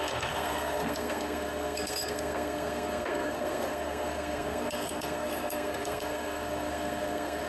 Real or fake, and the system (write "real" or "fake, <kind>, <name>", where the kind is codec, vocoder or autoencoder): fake, codec, SNAC